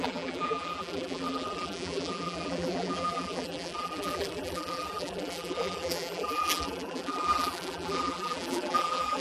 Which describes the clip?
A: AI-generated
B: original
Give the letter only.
A